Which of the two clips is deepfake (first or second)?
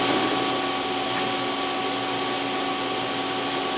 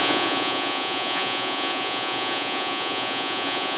second